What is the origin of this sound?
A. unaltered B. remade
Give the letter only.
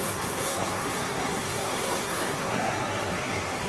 B